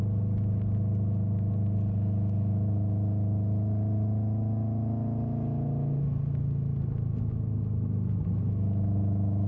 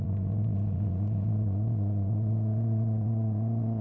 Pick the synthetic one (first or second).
second